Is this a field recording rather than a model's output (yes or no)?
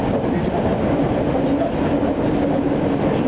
yes